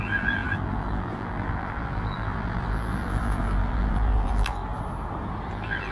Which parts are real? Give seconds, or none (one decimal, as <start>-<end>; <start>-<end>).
4.6-5.5